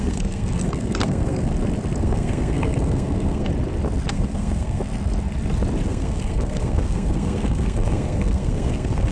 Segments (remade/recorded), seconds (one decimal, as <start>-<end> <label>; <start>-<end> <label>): 0.0-1.5 remade; 1.5-2.0 recorded; 2.0-3.5 remade; 3.5-4.1 recorded; 4.1-4.8 remade; 4.8-5.9 recorded; 5.9-9.1 remade